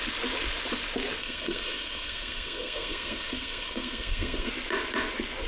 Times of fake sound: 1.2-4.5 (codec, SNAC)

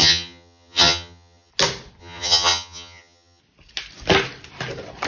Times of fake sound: 0.0-1.5 (vocoder, HiFi-GAN); 2.0-3.4

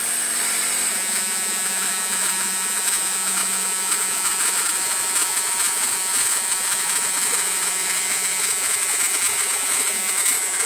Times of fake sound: 0.9-10.7 (vocoder, Vocos)

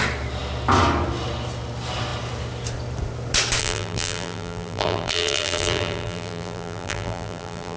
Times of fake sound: 3.6-7.8 (vocoder, BigVGAN v2)

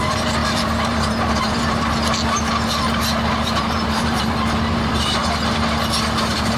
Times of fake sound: 0.0-1.9 (vocoder, BigVGAN v2); 3.3-5.2; 6.0-6.6

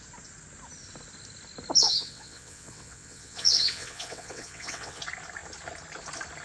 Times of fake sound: 1.8-5.0 (vocoder, WaveNeXt)